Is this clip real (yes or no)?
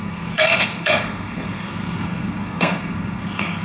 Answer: no